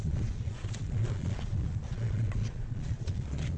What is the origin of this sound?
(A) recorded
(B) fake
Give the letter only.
B